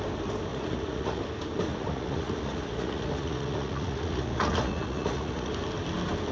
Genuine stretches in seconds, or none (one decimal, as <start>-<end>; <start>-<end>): 0.0-0.5; 1.2-1.7; 5.5-6.3